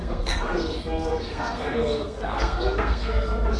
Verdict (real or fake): fake